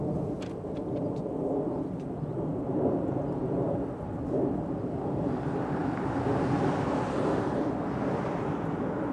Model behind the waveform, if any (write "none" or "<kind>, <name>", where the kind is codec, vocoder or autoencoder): none